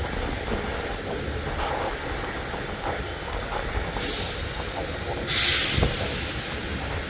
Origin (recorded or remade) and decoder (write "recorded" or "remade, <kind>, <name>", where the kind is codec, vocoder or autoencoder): recorded